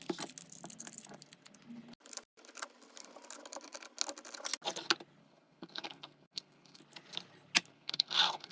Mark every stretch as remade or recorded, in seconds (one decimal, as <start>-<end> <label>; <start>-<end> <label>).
0.0-5.2 recorded; 5.2-6.8 remade; 6.8-7.7 recorded; 7.7-8.5 remade